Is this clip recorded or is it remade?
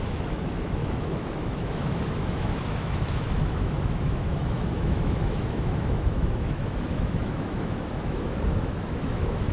remade